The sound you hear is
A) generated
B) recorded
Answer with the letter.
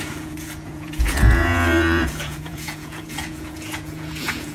A